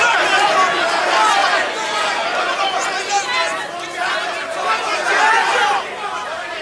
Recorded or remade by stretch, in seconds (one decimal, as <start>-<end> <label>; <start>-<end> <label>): 0.0-1.4 recorded; 1.4-3.0 remade; 3.0-6.6 recorded